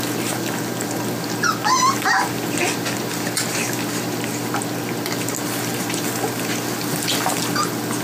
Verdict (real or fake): real